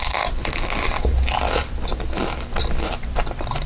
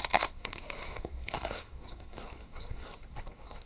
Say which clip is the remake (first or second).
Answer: second